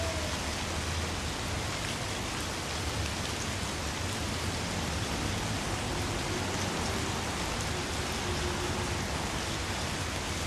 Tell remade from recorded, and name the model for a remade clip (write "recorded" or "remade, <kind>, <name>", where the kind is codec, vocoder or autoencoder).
recorded